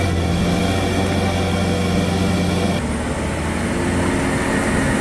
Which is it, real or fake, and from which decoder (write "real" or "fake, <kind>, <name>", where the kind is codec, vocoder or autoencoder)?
real